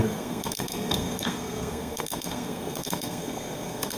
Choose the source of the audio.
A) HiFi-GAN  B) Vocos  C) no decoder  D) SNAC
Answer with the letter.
D